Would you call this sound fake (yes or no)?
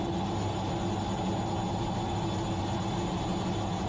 no